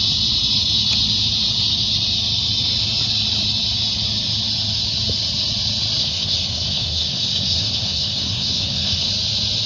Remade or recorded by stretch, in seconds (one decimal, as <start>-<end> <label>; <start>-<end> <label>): 0.0-6.0 recorded; 6.0-9.1 remade; 9.1-9.7 recorded